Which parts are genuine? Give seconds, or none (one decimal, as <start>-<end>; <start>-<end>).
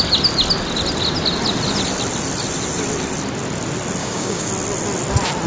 0.0-4.0; 4.5-5.5